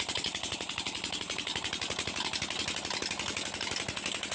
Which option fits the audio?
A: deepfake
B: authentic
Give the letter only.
B